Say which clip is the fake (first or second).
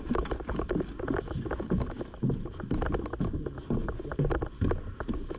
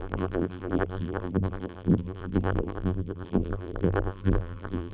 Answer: second